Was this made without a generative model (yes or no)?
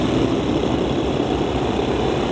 yes